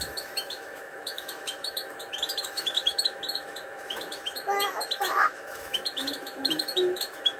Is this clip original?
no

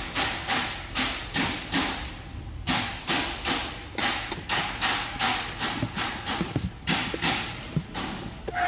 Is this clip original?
yes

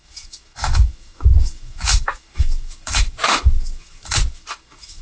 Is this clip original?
no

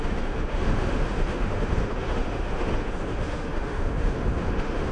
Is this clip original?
no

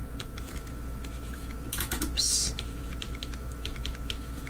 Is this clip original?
no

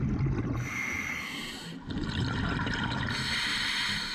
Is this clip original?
yes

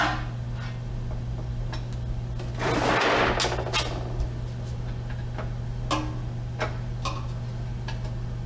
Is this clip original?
yes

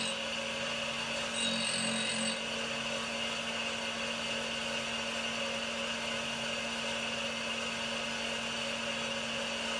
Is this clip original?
yes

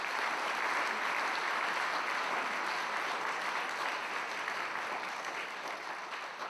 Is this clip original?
yes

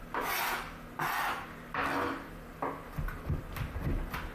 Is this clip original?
yes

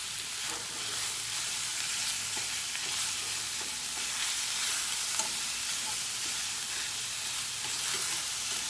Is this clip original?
yes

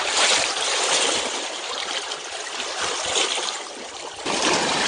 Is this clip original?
yes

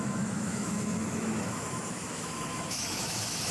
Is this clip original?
no